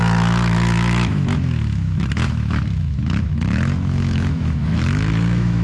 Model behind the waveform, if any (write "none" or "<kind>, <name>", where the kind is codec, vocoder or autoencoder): autoencoder, DAC-VAE